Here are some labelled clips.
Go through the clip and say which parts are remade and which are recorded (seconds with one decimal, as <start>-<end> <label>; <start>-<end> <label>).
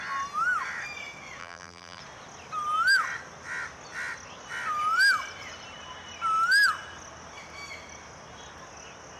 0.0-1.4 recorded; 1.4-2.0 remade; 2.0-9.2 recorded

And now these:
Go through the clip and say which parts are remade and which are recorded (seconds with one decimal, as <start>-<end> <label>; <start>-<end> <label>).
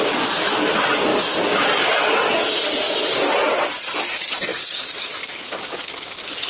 0.0-6.5 recorded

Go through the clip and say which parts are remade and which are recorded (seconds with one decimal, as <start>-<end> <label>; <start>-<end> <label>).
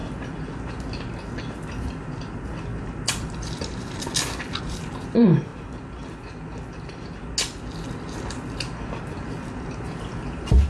0.0-4.6 recorded; 4.6-5.5 remade; 5.5-9.5 recorded; 9.5-10.7 remade